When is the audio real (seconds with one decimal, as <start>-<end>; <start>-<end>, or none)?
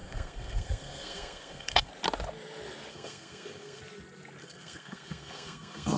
1.9-2.9; 3.8-4.4